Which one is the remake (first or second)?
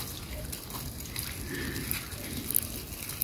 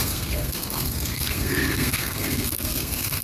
second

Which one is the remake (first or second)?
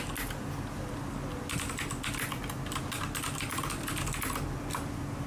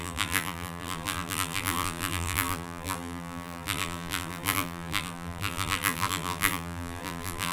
second